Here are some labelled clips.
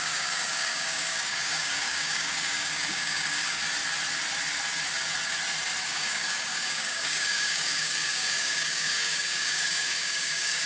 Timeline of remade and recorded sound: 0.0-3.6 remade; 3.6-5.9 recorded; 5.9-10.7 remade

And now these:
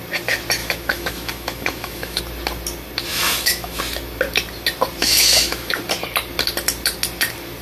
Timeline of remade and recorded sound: 0.0-0.6 recorded; 0.6-2.2 remade; 2.2-3.1 recorded; 3.1-3.8 remade; 3.8-5.0 recorded; 5.0-5.8 remade; 5.8-7.6 recorded

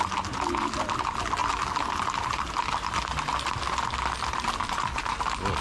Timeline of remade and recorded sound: 0.0-5.6 recorded